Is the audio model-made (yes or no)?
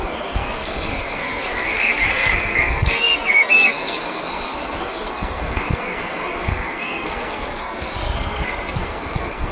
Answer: yes